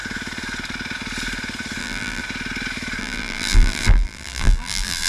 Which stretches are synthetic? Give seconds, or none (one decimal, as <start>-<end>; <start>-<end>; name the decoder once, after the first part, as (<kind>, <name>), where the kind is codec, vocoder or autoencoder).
1.8-2.2 (vocoder, BigVGAN v2); 3.0-5.1